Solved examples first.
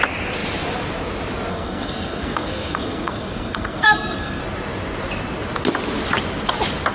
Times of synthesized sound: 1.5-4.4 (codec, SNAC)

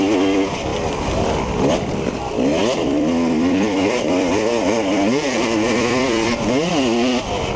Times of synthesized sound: 2.6-6.7 (vocoder, BigVGAN v2)